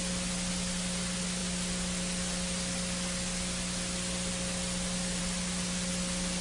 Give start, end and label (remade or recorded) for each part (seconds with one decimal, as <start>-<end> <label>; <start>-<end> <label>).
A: 0.0-6.4 recorded